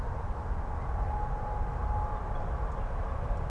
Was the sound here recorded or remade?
recorded